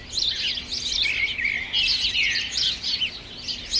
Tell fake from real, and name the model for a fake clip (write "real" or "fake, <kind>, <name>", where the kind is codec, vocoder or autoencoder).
real